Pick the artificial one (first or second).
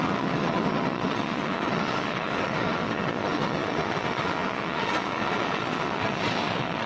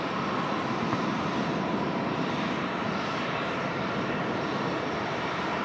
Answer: first